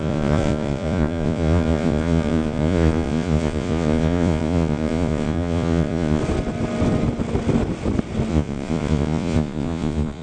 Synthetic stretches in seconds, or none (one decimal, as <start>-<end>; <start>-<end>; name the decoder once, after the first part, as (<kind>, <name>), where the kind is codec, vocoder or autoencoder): 0.0-6.2 (vocoder, Vocos); 8.3-10.2